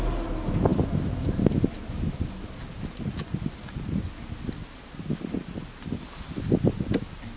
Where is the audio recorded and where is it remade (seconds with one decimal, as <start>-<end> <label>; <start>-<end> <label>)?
0.0-7.4 recorded